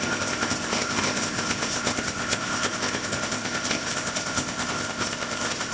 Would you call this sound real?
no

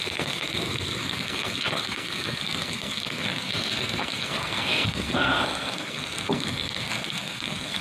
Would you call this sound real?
no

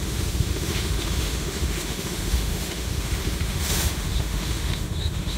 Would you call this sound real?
no